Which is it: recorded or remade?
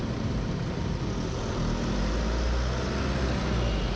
recorded